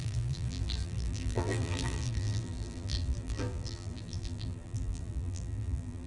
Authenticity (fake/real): fake